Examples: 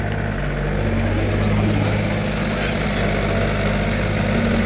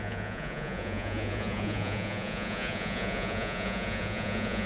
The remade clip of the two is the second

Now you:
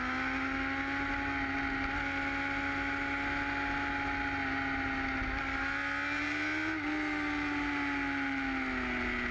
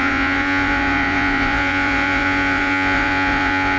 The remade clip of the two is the second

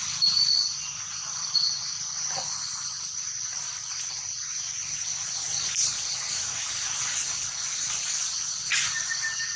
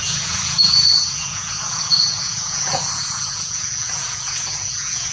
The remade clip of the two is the second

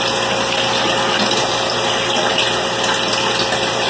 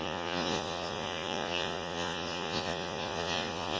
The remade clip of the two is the second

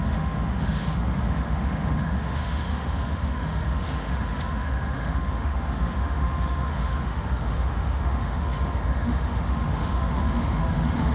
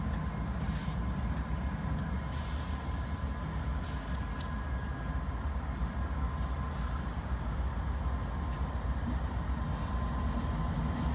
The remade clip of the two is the first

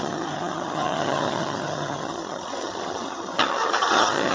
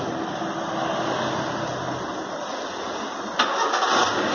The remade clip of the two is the first